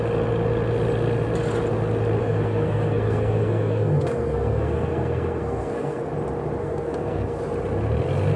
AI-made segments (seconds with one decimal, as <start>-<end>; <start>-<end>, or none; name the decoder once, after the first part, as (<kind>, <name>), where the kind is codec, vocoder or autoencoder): 2.2-6.1 (codec, SNAC); 6.6-7.4